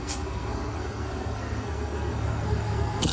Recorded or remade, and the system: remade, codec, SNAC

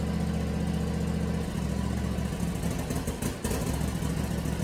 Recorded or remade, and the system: recorded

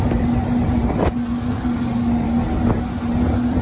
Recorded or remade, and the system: recorded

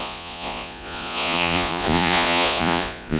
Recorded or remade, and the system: remade, vocoder, Vocos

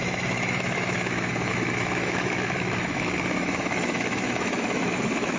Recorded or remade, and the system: remade, autoencoder, DAC-VAE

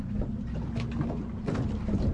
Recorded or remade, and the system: recorded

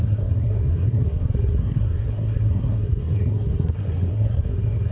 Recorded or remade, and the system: remade, codec, SNAC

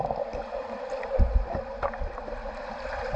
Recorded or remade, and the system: remade, vocoder, BigVGAN v2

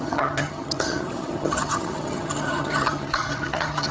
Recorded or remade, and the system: remade, vocoder, HiFi-GAN